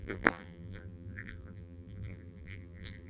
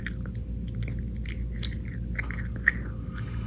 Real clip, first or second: second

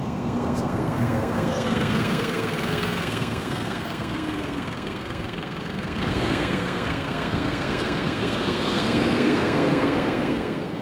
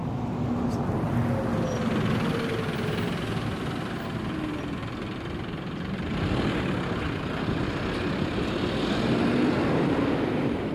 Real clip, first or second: second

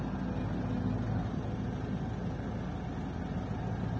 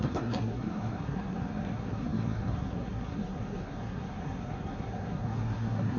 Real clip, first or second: first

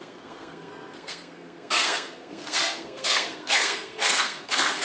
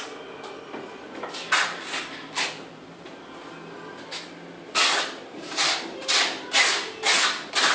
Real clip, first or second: second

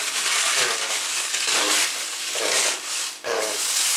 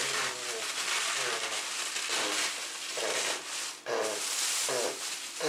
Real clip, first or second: second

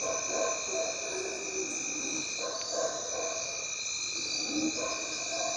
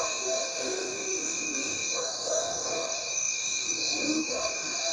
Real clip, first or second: first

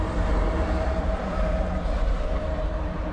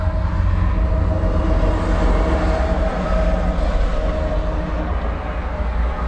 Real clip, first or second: second